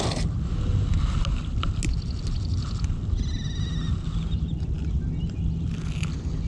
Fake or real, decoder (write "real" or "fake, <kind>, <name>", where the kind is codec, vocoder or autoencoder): real